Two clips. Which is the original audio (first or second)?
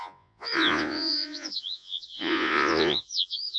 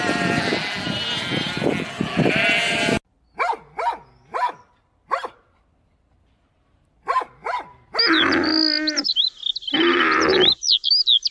second